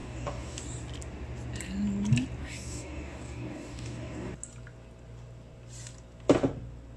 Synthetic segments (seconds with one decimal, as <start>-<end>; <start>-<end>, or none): 0.0-0.6; 2.4-4.3